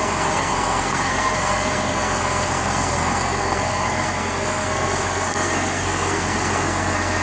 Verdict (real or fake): fake